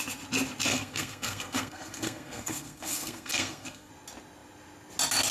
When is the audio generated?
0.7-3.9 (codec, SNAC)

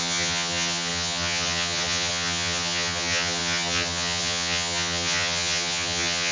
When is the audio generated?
0.0-6.3 (vocoder, HiFi-GAN)

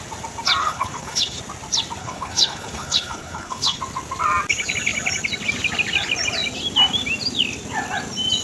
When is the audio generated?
0.6-1.4 (codec, HILCodec); 2.0-3.8